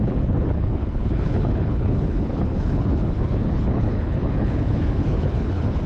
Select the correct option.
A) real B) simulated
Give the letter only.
B